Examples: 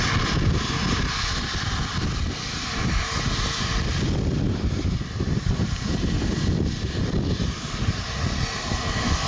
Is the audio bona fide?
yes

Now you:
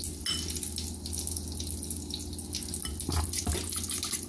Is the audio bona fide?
yes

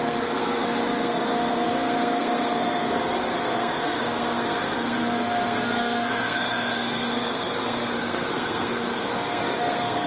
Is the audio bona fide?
no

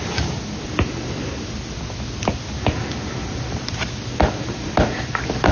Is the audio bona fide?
yes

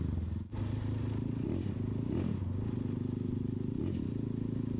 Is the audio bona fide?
yes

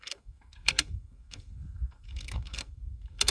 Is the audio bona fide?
no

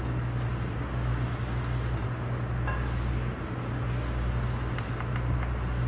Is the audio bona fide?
yes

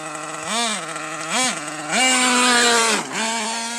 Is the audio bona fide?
yes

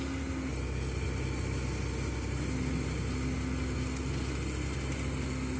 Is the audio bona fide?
yes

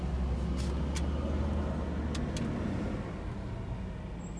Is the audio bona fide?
yes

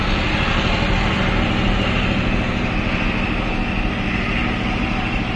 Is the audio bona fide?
yes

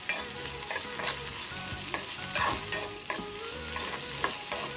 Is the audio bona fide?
yes